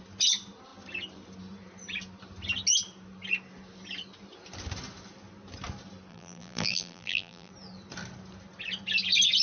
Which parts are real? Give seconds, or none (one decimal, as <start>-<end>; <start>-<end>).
0.0-6.1; 7.5-9.4